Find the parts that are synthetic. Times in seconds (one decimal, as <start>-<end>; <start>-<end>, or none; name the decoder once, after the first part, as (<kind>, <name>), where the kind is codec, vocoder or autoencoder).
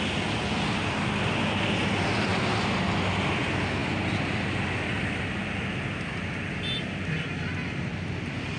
none